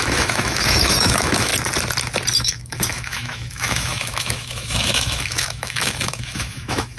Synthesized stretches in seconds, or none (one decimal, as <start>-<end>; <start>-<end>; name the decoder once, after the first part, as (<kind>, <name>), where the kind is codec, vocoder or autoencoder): 0.0-1.5 (autoencoder, DAC-VAE); 2.4-7.0

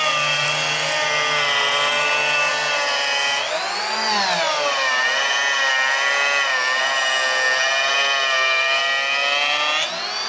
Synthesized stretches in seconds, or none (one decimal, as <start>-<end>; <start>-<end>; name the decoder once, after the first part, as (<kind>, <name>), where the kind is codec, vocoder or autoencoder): none

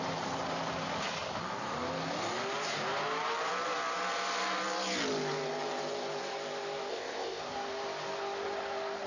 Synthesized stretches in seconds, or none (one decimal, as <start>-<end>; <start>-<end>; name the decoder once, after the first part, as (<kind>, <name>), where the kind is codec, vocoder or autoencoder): 6.9-7.4 (codec, ZipCodec)

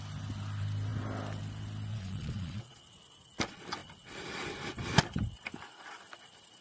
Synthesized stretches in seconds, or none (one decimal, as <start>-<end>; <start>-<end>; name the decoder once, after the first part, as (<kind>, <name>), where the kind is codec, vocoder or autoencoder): 1.9-2.8 (vocoder, Vocos)

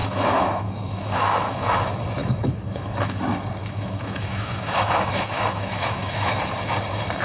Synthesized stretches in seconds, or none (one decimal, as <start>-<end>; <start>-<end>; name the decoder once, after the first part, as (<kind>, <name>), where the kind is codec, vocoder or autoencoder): 0.0-1.7 (autoencoder, DAC-VAE); 2.2-3.2; 3.6-6.4

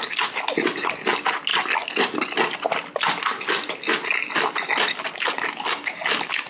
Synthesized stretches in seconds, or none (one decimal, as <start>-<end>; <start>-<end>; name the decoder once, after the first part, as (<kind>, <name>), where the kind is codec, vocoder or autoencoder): none

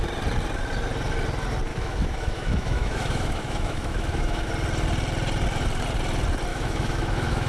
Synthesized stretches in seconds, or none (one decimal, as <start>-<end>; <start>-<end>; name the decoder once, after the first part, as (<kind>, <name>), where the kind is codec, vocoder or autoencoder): 1.7-4.5 (autoencoder, DAC-VAE); 6.5-7.5

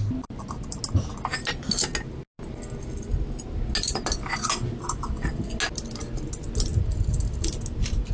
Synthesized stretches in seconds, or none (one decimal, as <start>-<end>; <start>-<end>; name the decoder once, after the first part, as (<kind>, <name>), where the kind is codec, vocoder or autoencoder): none